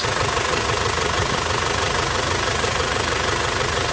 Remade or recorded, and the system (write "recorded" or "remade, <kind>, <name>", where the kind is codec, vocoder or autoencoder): remade, vocoder, Vocos